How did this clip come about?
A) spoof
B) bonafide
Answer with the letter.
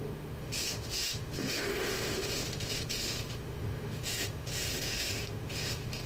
A